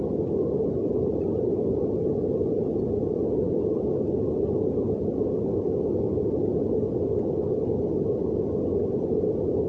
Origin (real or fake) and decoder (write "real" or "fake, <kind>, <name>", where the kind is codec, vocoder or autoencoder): real